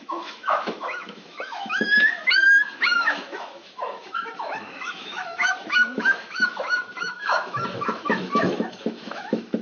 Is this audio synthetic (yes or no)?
yes